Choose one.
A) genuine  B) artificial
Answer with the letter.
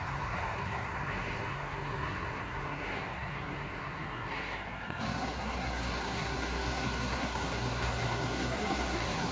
B